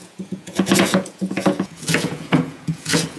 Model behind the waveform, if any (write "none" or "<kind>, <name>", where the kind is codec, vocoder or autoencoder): vocoder, Vocos